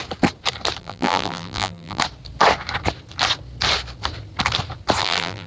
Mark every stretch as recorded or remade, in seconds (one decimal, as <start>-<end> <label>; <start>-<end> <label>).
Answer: 0.0-0.8 recorded; 0.8-2.0 remade; 2.0-5.0 recorded; 5.0-5.5 remade